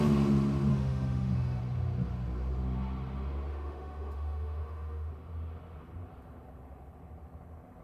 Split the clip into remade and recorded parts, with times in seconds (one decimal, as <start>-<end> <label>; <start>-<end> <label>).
0.0-0.7 recorded; 0.7-1.6 remade; 1.6-3.5 recorded; 3.5-5.1 remade; 5.1-7.8 recorded